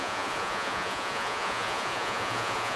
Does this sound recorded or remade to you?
remade